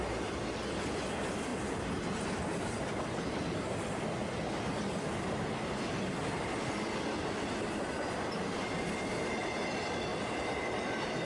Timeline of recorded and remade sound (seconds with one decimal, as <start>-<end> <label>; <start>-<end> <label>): 0.0-11.3 recorded